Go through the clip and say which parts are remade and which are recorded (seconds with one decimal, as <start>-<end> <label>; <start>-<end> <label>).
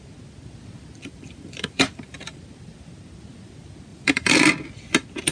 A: 0.0-1.0 recorded; 1.0-2.4 remade; 2.4-3.9 recorded; 3.9-4.5 remade; 4.5-5.3 recorded